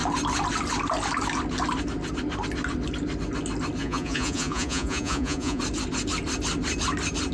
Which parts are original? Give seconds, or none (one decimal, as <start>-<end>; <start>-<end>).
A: 0.0-3.8; 5.6-7.3